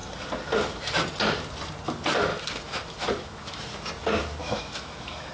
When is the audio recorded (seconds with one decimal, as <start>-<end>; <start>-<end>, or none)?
0.0-2.3; 3.6-4.4